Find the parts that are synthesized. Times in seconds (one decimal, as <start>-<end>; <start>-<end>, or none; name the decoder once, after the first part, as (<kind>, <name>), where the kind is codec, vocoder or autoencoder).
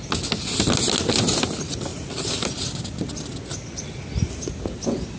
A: none